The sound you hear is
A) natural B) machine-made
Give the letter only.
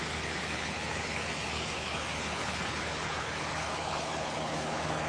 B